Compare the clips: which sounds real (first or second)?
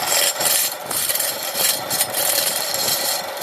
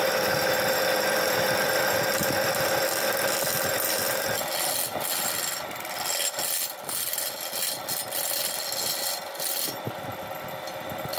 second